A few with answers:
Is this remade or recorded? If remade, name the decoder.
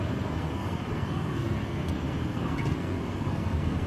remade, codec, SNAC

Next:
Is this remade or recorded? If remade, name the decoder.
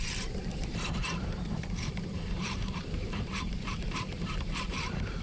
remade, vocoder, BigVGAN v2